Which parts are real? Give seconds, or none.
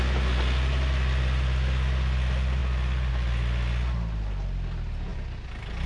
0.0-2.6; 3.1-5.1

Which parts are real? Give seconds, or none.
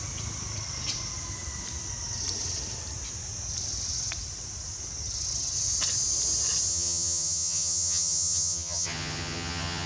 0.0-6.7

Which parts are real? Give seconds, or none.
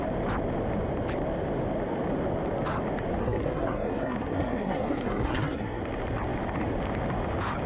0.0-3.2; 5.8-7.7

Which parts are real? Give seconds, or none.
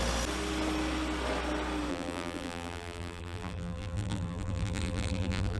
0.0-1.9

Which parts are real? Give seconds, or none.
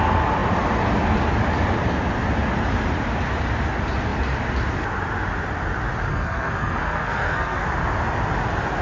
0.0-6.1; 7.6-8.8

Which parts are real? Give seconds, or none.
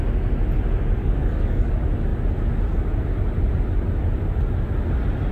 0.0-1.0; 1.7-5.3